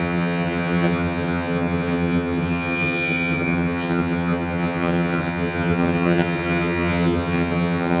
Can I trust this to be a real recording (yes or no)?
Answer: no